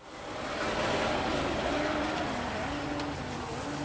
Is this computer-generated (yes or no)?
no